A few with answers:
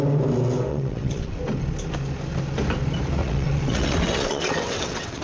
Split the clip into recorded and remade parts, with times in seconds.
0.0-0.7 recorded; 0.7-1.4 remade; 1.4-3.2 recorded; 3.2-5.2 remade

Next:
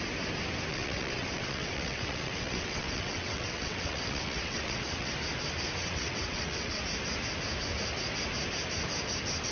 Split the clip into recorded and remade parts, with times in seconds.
0.0-0.7 recorded; 0.7-5.1 remade; 5.1-5.8 recorded; 5.8-6.8 remade; 6.8-9.5 recorded

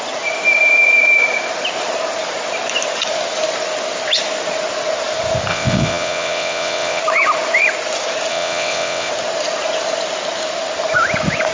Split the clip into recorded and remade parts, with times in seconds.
0.0-5.5 recorded; 5.5-7.0 remade; 7.0-8.3 recorded; 8.3-9.1 remade; 9.1-11.5 recorded

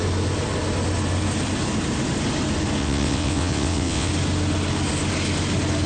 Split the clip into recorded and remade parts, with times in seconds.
0.0-2.8 recorded; 2.8-4.1 remade; 4.1-5.9 recorded